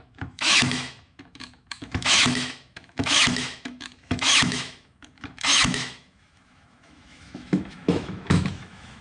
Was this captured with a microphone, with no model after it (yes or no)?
no